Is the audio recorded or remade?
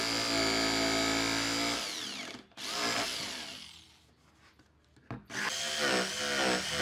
recorded